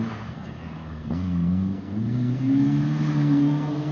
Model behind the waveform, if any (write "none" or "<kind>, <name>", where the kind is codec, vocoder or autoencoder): codec, SNAC